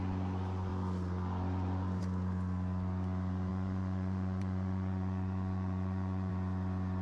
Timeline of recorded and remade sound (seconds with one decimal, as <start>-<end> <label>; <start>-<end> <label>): 0.0-3.5 recorded; 3.5-6.3 remade; 6.3-7.0 recorded